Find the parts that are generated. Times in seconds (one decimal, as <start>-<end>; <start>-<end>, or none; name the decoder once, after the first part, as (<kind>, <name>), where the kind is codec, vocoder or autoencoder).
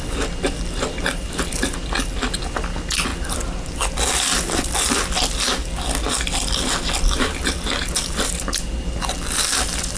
none